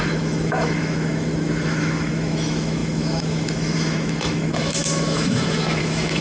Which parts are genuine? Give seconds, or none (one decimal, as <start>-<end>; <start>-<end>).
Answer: none